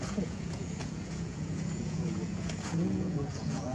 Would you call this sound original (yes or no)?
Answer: no